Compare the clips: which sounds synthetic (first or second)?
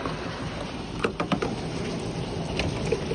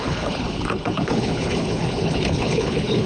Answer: second